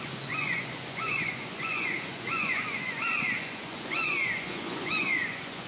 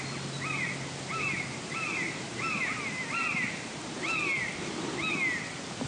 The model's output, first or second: first